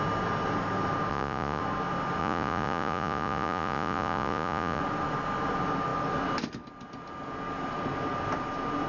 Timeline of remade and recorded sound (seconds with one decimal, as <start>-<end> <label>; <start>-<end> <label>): 0.0-1.1 recorded; 1.1-1.6 remade; 1.6-2.2 recorded; 2.2-4.8 remade; 4.8-8.9 recorded